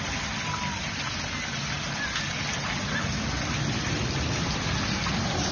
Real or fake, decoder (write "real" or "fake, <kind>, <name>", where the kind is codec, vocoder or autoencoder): real